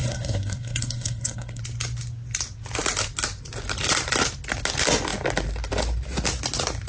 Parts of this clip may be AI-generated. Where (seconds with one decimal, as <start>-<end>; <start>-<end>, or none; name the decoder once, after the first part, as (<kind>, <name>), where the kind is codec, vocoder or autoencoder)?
0.0-1.6 (codec, SNAC)